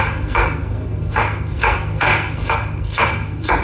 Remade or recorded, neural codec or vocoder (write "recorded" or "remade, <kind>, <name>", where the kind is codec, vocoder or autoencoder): remade, codec, SNAC